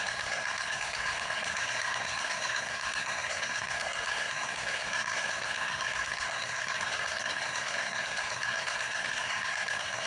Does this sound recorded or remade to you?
remade